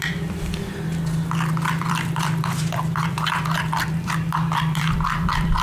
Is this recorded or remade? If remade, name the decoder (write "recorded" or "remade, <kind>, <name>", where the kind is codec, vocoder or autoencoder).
remade, vocoder, BigVGAN v2